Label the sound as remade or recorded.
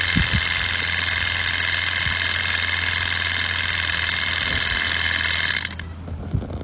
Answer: recorded